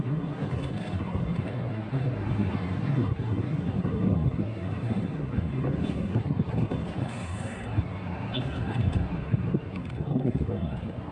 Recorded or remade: remade